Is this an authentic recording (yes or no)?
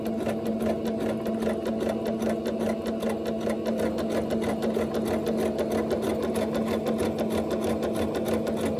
yes